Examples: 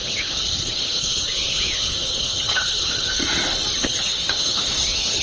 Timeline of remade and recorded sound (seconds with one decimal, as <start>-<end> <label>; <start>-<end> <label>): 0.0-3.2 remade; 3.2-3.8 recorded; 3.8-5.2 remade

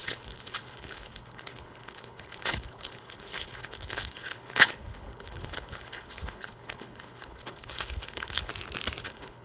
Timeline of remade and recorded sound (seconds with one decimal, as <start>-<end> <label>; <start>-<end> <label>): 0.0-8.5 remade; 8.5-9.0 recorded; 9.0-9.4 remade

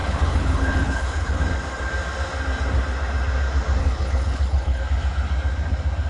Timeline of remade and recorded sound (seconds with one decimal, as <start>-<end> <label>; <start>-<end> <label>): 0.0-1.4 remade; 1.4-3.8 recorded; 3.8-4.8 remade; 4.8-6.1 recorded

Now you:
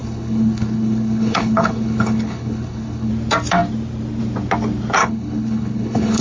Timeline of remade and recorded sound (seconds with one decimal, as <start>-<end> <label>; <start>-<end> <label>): 0.0-3.1 remade; 3.1-5.0 recorded; 5.0-6.2 remade

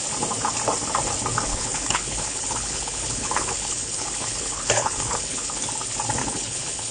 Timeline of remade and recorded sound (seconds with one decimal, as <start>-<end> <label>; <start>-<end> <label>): 0.0-1.5 recorded; 1.5-5.6 remade; 5.6-6.2 recorded; 6.2-6.9 remade

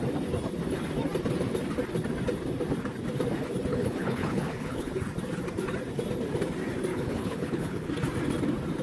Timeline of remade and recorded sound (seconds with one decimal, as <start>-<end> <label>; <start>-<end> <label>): 0.0-3.7 recorded; 3.7-4.9 remade; 4.9-6.9 recorded; 6.9-7.9 remade; 7.9-8.8 recorded

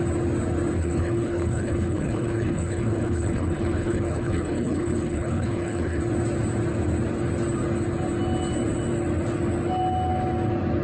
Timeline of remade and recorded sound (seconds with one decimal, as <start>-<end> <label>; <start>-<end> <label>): 0.0-0.8 recorded; 0.8-6.0 remade; 6.0-10.8 recorded

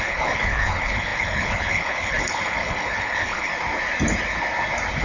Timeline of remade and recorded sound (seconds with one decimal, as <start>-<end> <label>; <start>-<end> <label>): 0.0-3.5 remade; 3.5-5.0 recorded